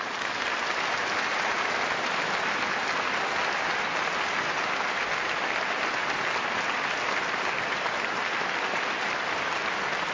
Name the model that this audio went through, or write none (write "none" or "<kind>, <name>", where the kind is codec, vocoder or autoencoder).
none